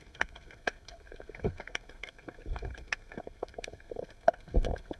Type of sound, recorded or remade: remade